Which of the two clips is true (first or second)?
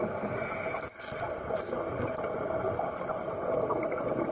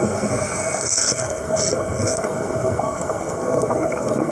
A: first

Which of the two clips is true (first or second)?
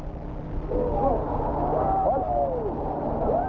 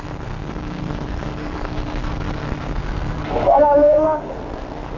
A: first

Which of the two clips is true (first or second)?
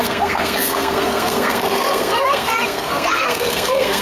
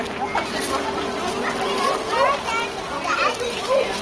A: second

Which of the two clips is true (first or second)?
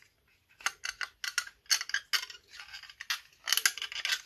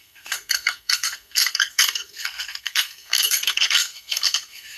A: first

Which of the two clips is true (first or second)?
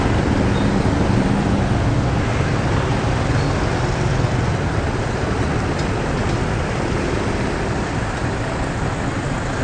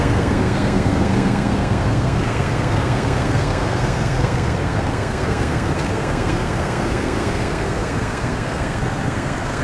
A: first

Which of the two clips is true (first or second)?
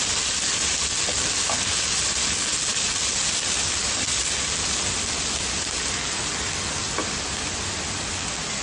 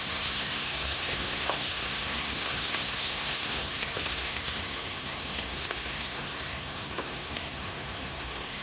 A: first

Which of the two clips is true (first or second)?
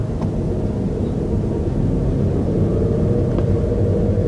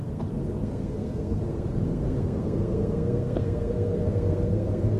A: first